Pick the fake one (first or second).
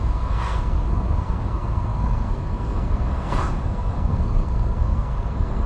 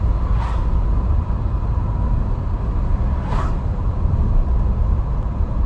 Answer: first